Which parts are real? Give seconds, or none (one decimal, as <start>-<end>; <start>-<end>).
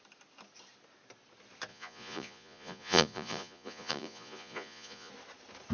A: 0.0-1.7; 5.1-5.7